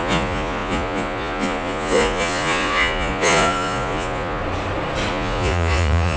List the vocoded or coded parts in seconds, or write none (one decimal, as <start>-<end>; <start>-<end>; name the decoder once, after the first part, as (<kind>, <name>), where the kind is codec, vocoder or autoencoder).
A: 0.0-4.4 (vocoder, Vocos); 5.1-6.2